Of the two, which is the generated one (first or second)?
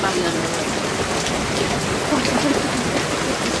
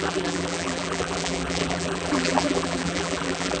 second